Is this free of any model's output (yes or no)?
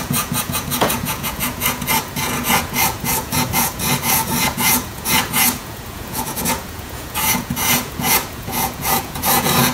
no